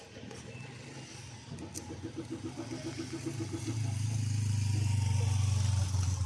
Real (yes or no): yes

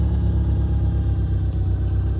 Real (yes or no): yes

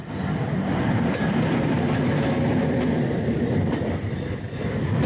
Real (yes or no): yes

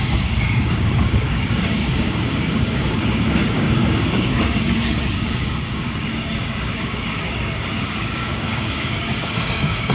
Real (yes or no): no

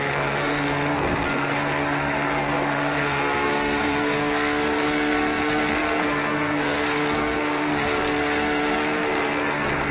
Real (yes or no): no